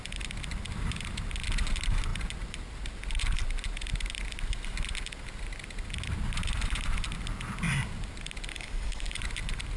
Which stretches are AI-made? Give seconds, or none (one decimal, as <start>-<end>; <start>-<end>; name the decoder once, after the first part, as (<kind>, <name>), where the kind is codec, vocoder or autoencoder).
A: 8.5-9.2 (codec, DAC)